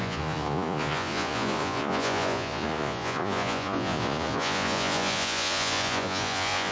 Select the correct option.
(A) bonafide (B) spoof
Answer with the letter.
B